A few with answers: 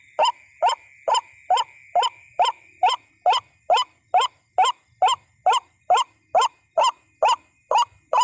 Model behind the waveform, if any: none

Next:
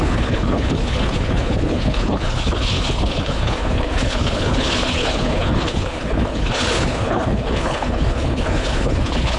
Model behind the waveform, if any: codec, HILCodec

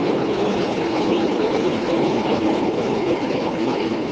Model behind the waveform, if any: codec, HILCodec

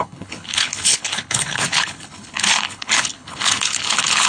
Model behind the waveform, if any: codec, HILCodec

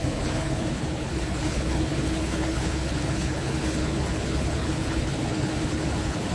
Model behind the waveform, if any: codec, HILCodec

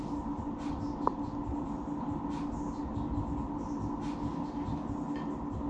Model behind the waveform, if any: none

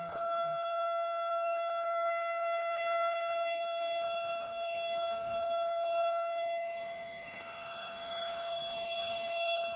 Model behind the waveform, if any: codec, HILCodec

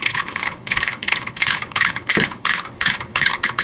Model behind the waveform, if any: codec, HILCodec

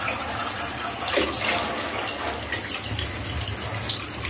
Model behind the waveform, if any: none